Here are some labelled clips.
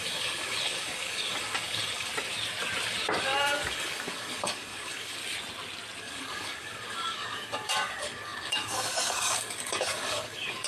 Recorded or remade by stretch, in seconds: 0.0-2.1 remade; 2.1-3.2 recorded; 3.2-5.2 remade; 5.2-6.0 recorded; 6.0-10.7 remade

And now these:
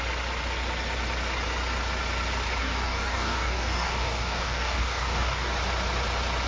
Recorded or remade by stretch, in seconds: 0.0-2.6 recorded; 2.6-5.5 remade; 5.5-6.5 recorded

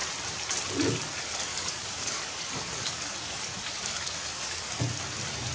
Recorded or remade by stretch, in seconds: 0.0-1.5 recorded; 1.5-4.8 remade; 4.8-5.5 recorded